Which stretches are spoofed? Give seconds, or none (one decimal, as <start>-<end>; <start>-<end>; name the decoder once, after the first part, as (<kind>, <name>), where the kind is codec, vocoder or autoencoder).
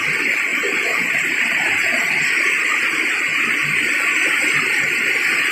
0.5-2.0 (vocoder, BigVGAN v2); 3.3-3.9